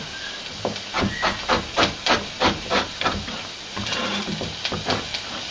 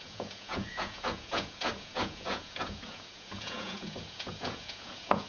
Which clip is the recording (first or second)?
first